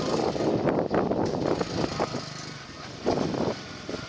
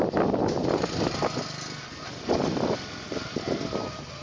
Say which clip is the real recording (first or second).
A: second